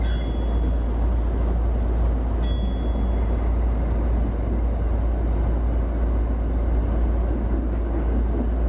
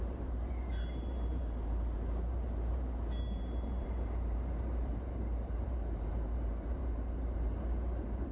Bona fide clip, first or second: first